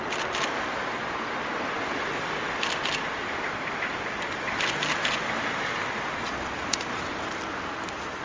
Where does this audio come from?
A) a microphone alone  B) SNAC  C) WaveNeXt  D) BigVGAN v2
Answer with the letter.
A